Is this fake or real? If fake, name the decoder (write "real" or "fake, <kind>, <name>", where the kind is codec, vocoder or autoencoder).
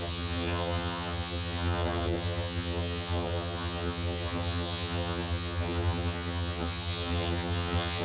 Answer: fake, vocoder, HiFi-GAN